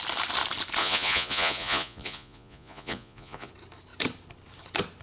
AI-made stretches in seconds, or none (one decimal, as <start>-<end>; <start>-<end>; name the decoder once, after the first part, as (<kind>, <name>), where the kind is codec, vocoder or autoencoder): 0.8-3.5 (vocoder, Vocos)